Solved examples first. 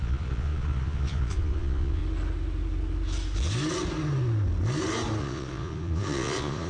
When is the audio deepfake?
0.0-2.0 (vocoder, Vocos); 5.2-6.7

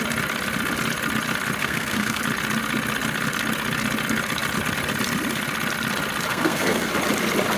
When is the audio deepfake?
1.6-2.2 (codec, SNAC); 6.3-6.9

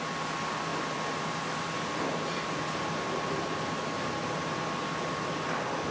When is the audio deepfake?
none

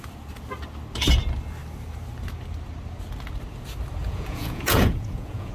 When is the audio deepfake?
4.0-5.5 (vocoder, Vocos)

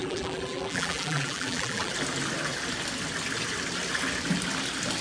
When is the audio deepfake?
0.0-1.9 (vocoder, BigVGAN v2)

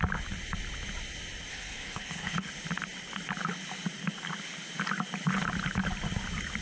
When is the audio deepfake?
1.5-2.5 (codec, HILCodec)